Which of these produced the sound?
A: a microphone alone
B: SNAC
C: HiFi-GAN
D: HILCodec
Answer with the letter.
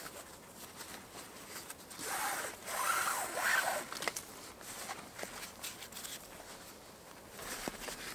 A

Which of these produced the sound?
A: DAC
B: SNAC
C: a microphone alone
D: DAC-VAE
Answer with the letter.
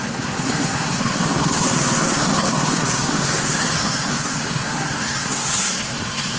B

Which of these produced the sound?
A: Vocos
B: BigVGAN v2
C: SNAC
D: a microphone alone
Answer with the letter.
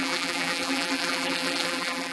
B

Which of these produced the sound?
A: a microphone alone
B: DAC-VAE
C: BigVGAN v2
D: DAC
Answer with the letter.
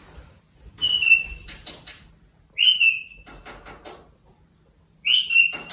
A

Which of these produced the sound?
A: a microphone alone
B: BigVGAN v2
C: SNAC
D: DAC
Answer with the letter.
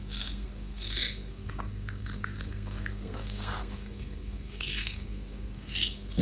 C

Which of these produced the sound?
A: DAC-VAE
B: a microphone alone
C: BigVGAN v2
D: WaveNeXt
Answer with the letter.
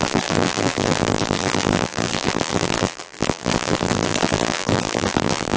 C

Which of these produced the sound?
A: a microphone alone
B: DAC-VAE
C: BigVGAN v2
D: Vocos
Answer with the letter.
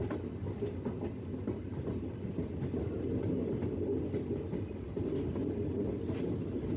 A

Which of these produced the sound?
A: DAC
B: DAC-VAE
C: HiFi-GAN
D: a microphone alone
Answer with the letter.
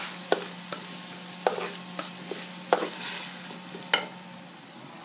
D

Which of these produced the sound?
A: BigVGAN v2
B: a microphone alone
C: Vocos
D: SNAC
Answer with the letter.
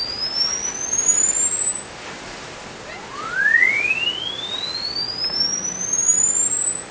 B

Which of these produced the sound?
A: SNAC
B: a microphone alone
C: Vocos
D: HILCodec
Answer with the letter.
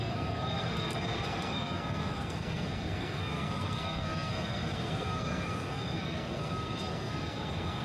A